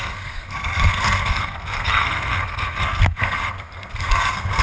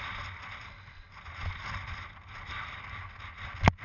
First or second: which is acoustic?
second